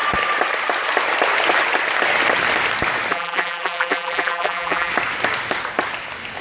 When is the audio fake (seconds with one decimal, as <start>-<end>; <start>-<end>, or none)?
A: 3.1-4.9